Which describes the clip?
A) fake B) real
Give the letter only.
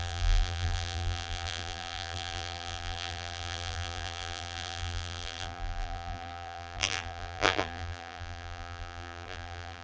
A